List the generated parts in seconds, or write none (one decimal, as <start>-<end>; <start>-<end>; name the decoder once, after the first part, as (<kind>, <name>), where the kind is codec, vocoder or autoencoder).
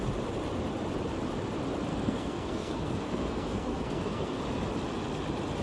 1.9-4.4 (codec, SNAC)